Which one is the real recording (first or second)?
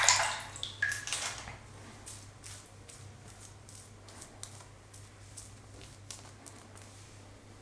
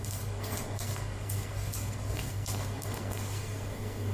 first